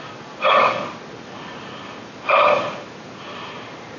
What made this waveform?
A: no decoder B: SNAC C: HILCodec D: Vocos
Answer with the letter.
A